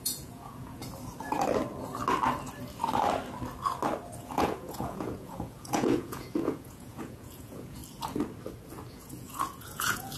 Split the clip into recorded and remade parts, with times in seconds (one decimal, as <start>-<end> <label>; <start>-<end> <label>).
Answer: 0.0-0.8 remade; 0.8-4.2 recorded; 4.2-7.8 remade; 7.8-8.9 recorded; 8.9-10.2 remade